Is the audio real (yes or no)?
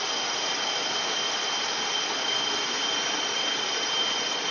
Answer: yes